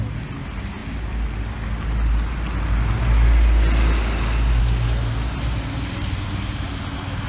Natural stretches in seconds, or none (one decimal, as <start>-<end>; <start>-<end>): 0.0-7.3